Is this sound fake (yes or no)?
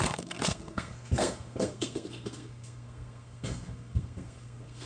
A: yes